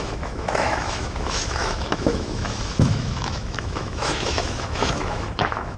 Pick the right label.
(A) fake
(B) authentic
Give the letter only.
A